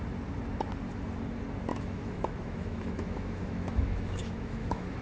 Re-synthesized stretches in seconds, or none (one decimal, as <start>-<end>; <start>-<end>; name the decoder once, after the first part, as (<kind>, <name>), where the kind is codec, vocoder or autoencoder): 1.7-5.0 (autoencoder, DAC-VAE)